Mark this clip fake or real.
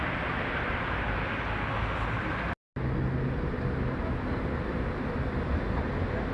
real